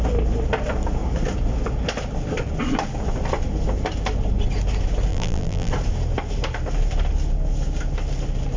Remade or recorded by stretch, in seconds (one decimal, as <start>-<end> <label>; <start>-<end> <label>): 0.0-5.1 recorded; 5.1-5.7 remade; 5.7-8.6 recorded